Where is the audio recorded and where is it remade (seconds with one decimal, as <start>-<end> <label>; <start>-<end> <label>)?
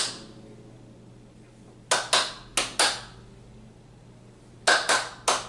0.0-5.5 recorded